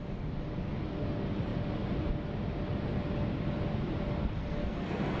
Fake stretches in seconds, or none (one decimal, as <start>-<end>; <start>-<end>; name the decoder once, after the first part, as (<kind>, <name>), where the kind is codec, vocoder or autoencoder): 4.2-5.2 (codec, SNAC)